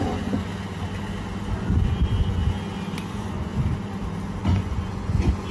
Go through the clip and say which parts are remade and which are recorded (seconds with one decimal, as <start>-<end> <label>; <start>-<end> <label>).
0.0-0.5 remade; 0.5-1.5 recorded; 1.5-2.4 remade; 2.4-3.1 recorded; 3.1-3.5 remade; 3.5-4.4 recorded; 4.4-5.5 remade